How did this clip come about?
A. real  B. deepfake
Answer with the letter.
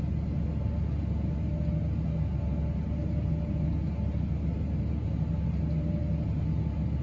A